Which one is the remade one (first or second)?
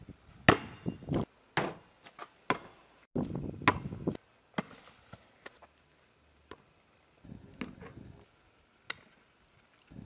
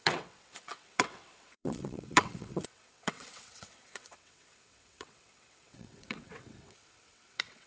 second